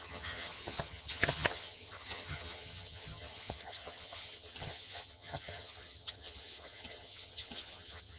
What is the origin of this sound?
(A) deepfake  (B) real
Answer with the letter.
A